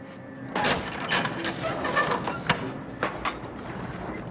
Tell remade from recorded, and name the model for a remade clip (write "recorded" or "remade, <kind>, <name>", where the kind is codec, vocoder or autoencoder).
recorded